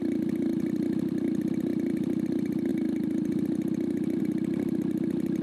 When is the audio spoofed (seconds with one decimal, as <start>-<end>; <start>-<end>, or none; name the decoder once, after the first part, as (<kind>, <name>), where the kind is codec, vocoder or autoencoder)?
none